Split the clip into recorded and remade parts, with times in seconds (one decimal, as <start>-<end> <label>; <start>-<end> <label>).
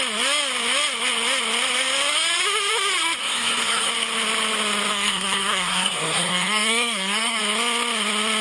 0.0-3.2 recorded; 3.2-3.9 remade; 3.9-4.9 recorded; 4.9-7.4 remade; 7.4-8.4 recorded